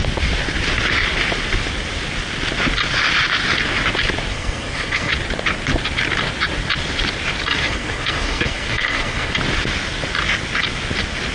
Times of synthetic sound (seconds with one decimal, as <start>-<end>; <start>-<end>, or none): 4.3-5.1; 7.6-9.3